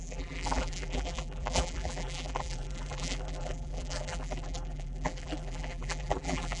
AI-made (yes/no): yes